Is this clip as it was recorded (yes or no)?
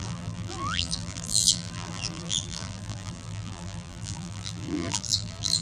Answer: no